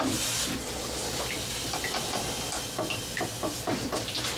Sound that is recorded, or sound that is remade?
recorded